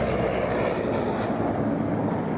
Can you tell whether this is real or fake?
real